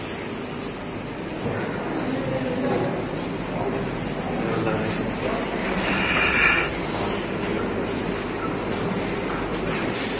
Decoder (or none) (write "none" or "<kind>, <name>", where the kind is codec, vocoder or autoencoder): none